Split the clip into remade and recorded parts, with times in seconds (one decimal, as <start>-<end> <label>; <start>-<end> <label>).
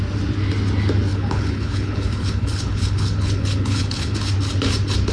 0.0-1.1 recorded; 1.1-4.2 remade; 4.2-5.1 recorded